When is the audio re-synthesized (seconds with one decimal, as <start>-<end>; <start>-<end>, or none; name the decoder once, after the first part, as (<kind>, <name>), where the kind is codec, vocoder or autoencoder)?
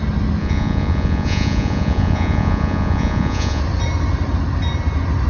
0.4-3.6 (vocoder, Vocos)